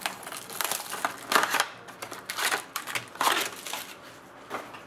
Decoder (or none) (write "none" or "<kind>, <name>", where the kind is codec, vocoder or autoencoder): none